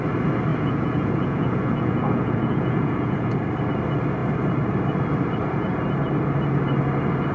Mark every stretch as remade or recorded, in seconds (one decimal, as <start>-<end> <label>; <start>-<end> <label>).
0.0-0.5 recorded; 0.5-3.3 remade; 3.3-7.3 recorded